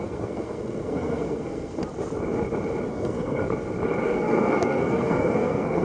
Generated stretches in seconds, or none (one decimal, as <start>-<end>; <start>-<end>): 0.0-1.8; 2.9-3.4; 4.0-5.8